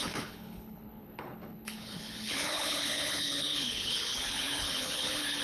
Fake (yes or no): yes